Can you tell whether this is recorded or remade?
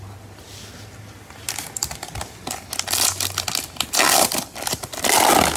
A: recorded